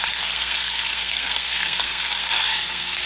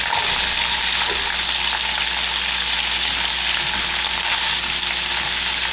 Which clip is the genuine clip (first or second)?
second